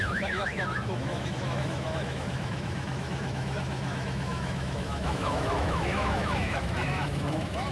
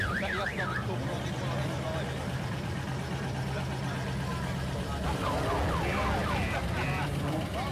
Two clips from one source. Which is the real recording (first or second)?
second